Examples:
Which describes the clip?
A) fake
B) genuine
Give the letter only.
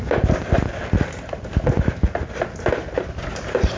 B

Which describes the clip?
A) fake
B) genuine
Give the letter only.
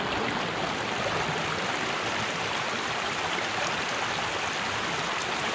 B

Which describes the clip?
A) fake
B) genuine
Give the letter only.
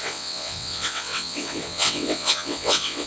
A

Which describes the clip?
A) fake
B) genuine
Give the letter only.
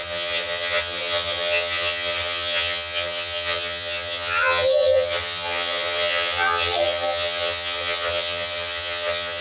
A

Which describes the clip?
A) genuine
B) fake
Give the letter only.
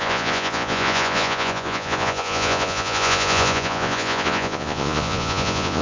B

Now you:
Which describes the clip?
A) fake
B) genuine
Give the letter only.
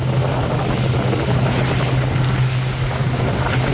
B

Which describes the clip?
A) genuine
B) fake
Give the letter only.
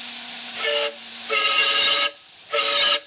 A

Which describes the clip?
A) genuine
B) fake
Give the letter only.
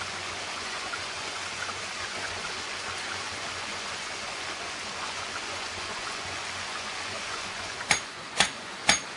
B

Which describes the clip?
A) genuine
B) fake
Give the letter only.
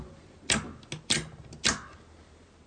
A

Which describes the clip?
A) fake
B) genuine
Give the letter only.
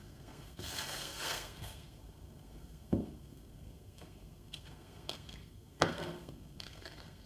A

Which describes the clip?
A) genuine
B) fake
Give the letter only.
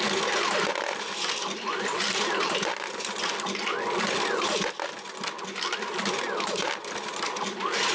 A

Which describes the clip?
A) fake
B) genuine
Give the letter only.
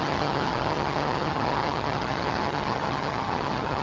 A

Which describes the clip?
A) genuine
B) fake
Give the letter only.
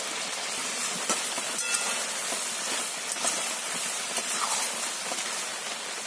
A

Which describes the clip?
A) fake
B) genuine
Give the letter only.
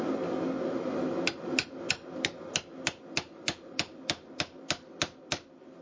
B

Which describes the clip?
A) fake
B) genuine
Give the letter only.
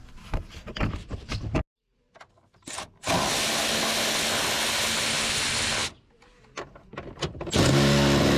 B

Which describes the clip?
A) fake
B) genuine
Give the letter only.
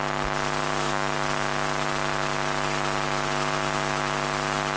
B